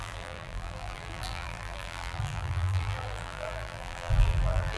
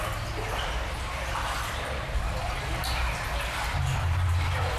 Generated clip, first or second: first